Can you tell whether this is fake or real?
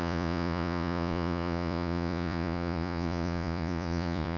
fake